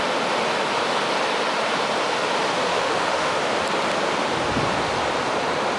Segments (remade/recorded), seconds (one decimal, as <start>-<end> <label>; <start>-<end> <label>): 0.0-2.7 recorded; 2.7-3.4 remade; 3.4-5.8 recorded